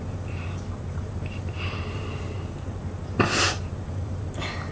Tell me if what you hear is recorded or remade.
remade